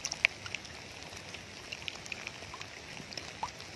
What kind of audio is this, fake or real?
real